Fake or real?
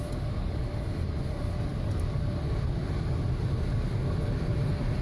real